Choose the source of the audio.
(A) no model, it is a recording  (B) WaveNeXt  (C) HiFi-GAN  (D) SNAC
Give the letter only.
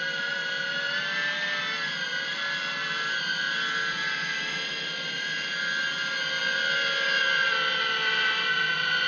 A